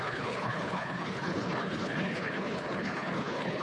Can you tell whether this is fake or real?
fake